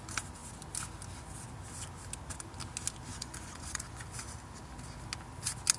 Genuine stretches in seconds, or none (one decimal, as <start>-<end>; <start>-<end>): 0.0-3.1; 4.0-5.8